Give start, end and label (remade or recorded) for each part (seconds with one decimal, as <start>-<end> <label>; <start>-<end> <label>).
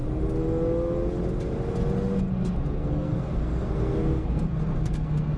0.0-2.2 recorded; 2.2-5.4 remade